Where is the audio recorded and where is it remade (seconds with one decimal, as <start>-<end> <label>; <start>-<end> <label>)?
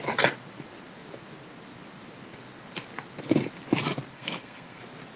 0.0-4.1 recorded; 4.1-4.8 remade; 4.8-5.2 recorded